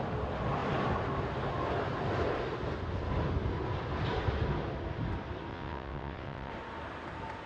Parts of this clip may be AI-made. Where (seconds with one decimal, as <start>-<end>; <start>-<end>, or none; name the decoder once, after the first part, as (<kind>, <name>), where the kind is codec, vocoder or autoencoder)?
5.5-6.5 (vocoder, WaveNeXt)